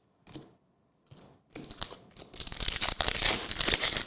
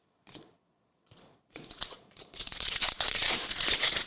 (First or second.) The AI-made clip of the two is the second